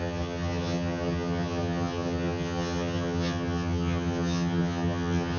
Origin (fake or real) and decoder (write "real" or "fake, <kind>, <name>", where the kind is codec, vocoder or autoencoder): fake, vocoder, HiFi-GAN